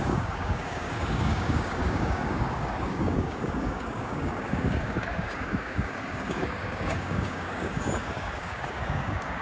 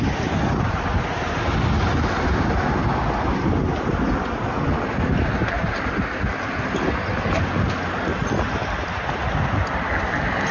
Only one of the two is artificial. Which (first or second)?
first